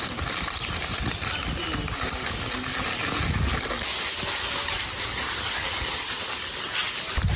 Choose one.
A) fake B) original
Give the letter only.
B